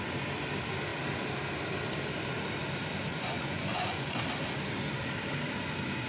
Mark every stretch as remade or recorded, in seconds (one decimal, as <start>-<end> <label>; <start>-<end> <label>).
0.0-3.1 recorded; 3.1-4.2 remade; 4.2-6.1 recorded